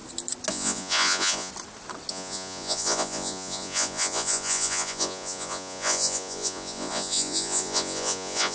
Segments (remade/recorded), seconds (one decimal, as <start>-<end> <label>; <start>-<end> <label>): 0.0-0.5 recorded; 0.5-1.5 remade; 1.5-2.1 recorded; 2.1-8.5 remade